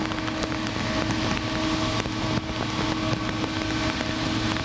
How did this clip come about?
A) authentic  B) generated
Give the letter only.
A